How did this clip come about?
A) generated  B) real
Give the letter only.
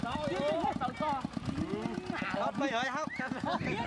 B